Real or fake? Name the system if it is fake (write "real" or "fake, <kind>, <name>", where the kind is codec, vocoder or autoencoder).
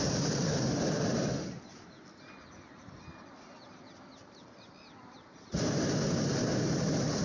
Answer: real